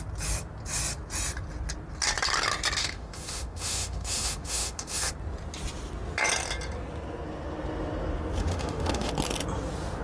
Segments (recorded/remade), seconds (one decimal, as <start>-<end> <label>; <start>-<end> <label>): 0.0-2.8 recorded; 2.8-5.1 remade; 5.1-8.4 recorded; 8.4-9.1 remade; 9.1-10.0 recorded